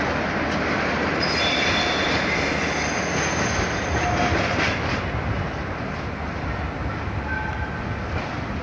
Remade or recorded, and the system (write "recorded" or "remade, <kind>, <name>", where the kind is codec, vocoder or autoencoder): recorded